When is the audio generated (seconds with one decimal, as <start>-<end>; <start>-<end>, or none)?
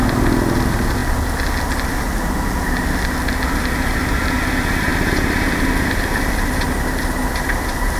0.0-1.0; 3.7-8.0